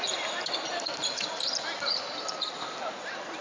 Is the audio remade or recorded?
remade